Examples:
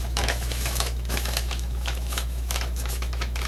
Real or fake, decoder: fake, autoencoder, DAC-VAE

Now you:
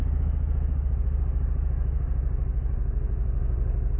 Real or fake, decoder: real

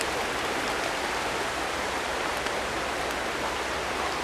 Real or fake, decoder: real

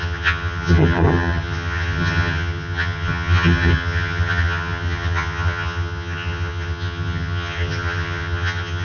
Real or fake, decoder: fake, vocoder, HiFi-GAN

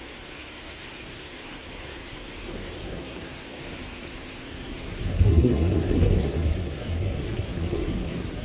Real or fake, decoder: fake, codec, SNAC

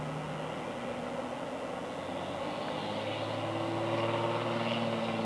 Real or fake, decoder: real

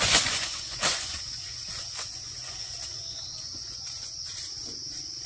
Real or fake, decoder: fake, vocoder, Vocos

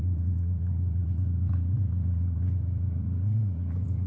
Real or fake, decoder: fake, vocoder, Vocos